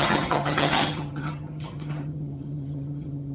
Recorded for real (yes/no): no